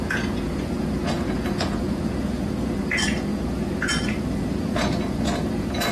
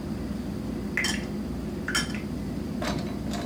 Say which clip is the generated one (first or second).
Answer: first